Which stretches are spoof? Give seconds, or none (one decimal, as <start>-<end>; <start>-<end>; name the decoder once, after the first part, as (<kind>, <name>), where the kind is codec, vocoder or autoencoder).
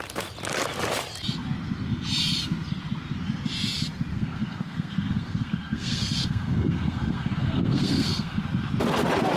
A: 4.1-8.4 (codec, SNAC)